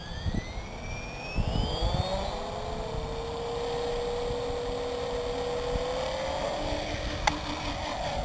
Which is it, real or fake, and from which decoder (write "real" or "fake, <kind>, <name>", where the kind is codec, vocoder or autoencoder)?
real